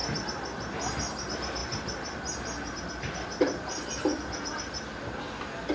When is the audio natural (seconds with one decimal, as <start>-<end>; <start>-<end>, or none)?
0.0-0.8